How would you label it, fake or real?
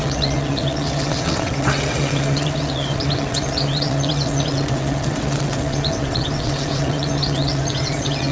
fake